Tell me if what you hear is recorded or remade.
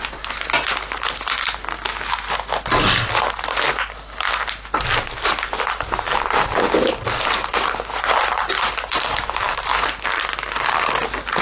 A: recorded